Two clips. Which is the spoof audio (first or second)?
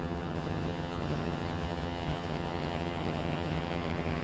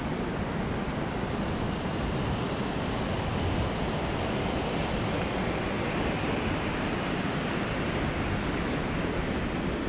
first